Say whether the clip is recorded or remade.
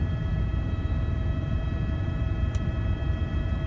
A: remade